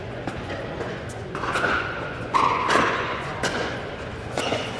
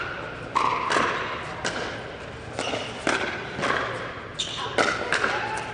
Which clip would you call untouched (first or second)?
second